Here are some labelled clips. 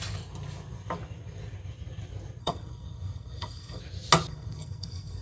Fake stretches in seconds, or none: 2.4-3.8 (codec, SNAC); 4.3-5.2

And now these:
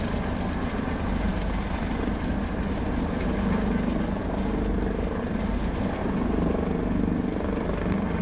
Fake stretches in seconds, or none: none